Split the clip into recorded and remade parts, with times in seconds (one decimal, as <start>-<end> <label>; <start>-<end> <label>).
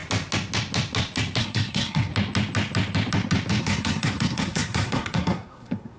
0.0-1.4 recorded; 1.4-2.1 remade; 2.1-3.6 recorded; 3.6-6.0 remade